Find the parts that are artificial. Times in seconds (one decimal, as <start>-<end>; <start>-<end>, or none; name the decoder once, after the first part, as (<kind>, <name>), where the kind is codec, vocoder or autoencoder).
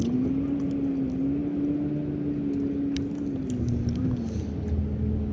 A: none